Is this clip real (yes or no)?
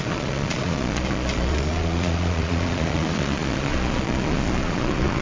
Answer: no